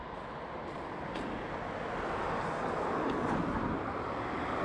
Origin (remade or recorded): recorded